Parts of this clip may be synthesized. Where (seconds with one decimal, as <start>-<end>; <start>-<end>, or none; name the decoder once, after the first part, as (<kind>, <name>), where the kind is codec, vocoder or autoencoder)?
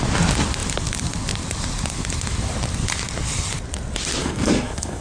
4.2-5.0 (codec, SNAC)